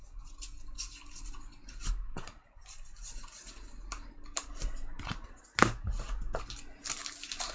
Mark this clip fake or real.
real